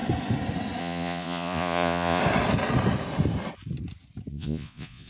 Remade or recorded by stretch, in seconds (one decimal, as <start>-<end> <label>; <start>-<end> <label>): 0.0-0.8 recorded; 0.8-2.2 remade; 2.2-4.3 recorded; 4.3-5.1 remade